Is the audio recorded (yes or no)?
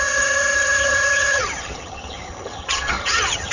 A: no